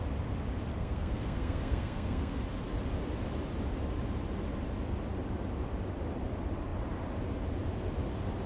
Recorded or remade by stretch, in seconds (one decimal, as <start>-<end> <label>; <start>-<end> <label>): 0.0-0.7 recorded; 0.7-2.4 remade; 2.4-8.5 recorded